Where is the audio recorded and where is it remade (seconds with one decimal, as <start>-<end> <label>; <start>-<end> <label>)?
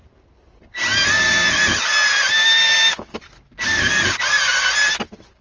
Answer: 0.0-5.4 recorded